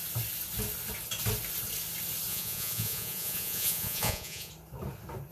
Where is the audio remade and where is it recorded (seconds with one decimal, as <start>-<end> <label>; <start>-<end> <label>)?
0.0-2.3 recorded; 2.3-4.5 remade; 4.5-5.3 recorded